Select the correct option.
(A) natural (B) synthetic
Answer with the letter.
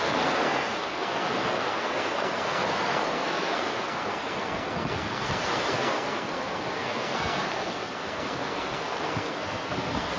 B